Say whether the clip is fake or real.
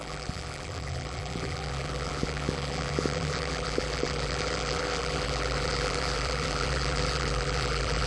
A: fake